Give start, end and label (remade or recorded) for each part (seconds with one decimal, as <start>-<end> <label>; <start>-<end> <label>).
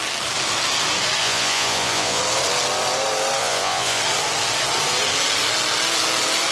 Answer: 0.0-1.2 recorded; 1.2-2.2 remade; 2.2-3.4 recorded; 3.4-4.0 remade; 4.0-6.5 recorded